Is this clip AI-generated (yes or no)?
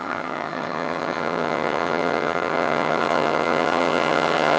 yes